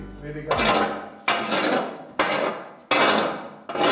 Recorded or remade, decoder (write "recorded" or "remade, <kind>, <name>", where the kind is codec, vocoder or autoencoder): recorded